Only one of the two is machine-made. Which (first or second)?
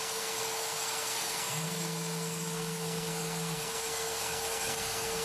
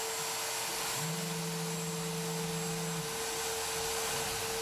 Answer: first